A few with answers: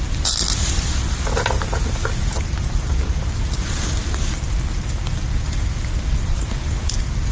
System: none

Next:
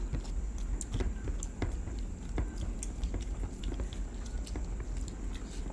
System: none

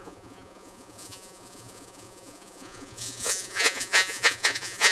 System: vocoder, Vocos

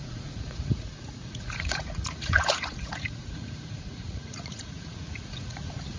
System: vocoder, Vocos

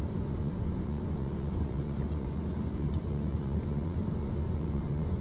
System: vocoder, Vocos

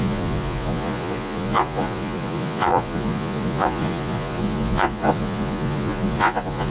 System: vocoder, Vocos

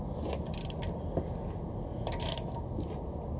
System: none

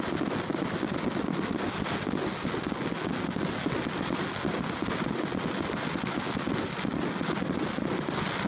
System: none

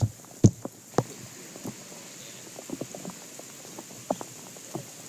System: none